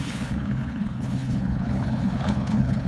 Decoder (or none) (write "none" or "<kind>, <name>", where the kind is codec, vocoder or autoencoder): codec, HILCodec